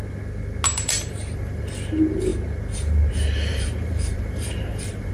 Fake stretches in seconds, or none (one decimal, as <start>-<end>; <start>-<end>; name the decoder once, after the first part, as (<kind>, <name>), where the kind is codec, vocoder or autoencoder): 0.7-1.6 (vocoder, BigVGAN v2); 3.5-5.1